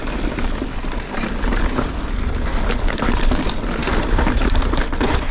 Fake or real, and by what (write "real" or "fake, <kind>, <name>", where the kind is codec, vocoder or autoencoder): real